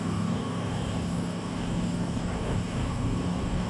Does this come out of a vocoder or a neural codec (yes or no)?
yes